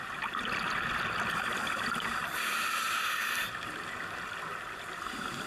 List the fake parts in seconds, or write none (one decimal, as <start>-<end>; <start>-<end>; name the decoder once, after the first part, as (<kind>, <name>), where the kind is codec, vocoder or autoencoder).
none

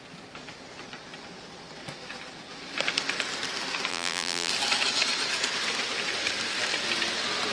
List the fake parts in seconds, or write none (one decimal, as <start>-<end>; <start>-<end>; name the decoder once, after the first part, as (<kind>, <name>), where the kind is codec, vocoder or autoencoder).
3.9-4.5 (vocoder, BigVGAN v2)

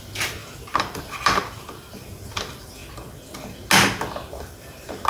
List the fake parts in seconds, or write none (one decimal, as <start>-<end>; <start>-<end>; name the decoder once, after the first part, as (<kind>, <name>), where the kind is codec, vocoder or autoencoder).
0.0-2.8 (vocoder, BigVGAN v2); 4.5-5.1

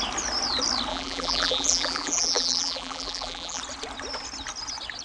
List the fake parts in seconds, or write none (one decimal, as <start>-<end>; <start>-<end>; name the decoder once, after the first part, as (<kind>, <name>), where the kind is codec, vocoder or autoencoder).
0.9-3.6 (vocoder, BigVGAN v2)